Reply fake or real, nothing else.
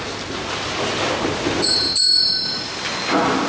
real